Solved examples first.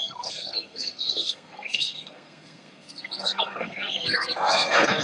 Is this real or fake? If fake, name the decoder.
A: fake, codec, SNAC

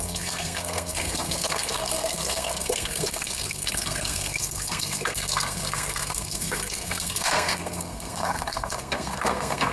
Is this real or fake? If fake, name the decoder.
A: fake, codec, SNAC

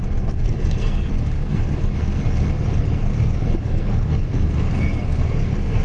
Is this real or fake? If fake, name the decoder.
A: fake, codec, SNAC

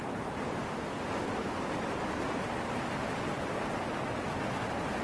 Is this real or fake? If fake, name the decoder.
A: real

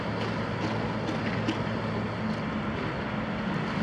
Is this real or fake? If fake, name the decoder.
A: real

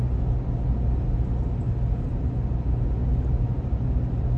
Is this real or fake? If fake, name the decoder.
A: real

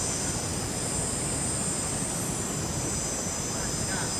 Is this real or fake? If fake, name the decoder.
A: real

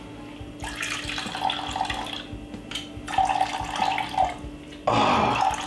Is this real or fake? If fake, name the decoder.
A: real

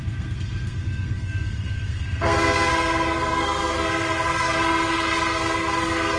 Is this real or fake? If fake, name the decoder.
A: fake, codec, SNAC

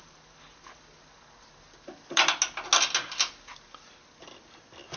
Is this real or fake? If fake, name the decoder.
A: real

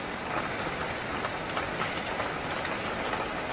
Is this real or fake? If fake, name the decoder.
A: real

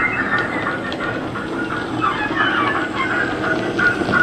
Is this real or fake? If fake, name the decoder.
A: real